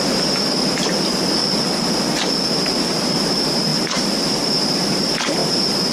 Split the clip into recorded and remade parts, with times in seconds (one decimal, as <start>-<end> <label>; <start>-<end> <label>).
0.0-1.4 remade; 1.4-3.0 recorded; 3.0-5.9 remade